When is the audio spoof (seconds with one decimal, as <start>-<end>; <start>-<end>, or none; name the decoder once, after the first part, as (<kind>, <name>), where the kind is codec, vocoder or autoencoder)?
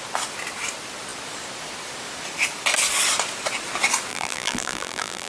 4.1-5.3 (vocoder, BigVGAN v2)